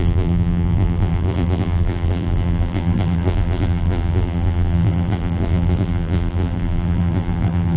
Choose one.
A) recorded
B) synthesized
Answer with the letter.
B